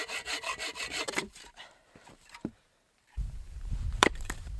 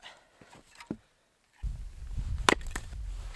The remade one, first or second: first